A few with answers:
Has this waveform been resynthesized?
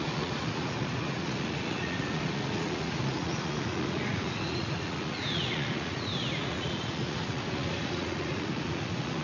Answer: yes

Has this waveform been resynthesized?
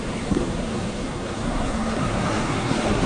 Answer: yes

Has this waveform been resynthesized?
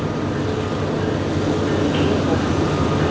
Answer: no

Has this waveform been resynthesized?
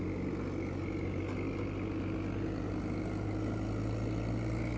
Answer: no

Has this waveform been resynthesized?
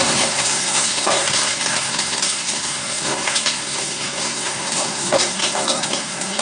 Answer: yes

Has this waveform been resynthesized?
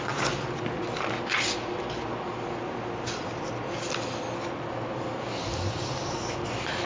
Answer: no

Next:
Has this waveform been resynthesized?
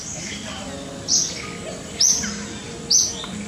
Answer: no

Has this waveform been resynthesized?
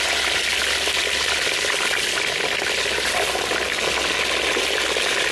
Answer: no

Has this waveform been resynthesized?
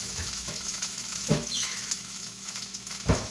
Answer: yes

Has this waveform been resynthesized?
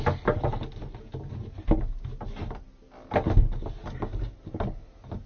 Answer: no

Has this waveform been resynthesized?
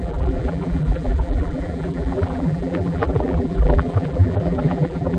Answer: yes